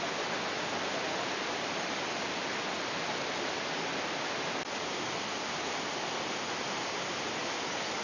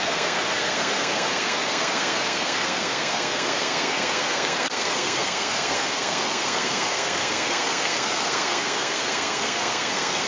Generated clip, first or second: second